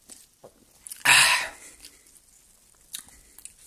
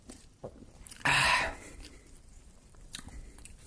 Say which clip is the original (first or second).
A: first